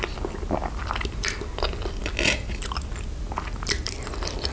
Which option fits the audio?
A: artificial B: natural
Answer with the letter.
B